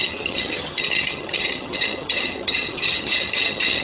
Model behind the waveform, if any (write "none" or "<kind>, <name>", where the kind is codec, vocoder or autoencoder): vocoder, HiFi-GAN